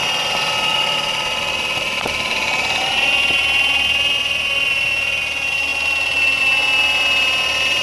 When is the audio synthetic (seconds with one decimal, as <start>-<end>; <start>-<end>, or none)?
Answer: 0.7-5.2